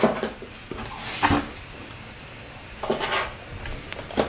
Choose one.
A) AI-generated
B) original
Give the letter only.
B